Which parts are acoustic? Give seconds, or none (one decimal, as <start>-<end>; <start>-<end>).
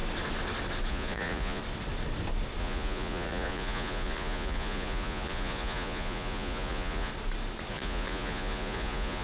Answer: 0.0-0.9; 1.6-2.6; 7.1-7.7